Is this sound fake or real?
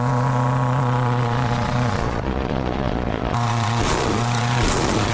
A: fake